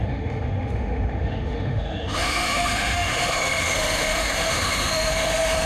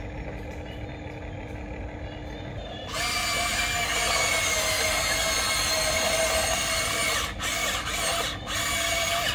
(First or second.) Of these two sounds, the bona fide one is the second